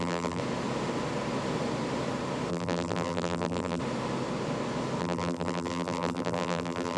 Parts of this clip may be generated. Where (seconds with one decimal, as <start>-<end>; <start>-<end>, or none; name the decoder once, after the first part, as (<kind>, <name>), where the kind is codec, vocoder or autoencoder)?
0.0-0.4 (vocoder, BigVGAN v2); 2.5-3.8; 5.0-7.0